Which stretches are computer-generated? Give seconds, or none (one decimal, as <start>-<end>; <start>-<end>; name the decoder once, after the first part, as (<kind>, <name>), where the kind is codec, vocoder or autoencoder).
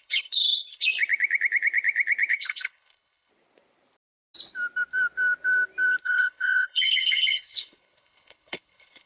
0.0-0.9 (codec, HILCodec); 2.3-3.3; 6.0-9.1